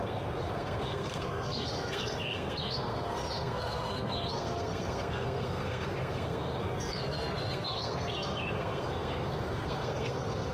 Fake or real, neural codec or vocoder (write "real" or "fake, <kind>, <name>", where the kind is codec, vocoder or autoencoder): fake, codec, SNAC